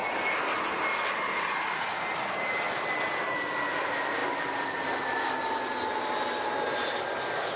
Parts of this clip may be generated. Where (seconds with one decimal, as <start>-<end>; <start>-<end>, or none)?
none